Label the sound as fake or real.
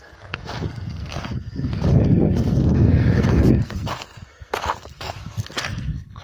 fake